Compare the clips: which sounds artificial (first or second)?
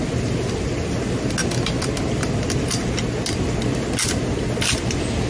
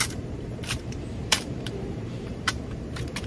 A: second